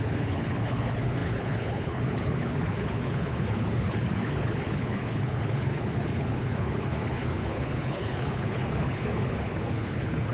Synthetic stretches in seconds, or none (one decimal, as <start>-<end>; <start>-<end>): 0.0-10.3